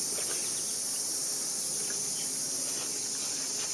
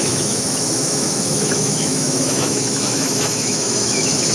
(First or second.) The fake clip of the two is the second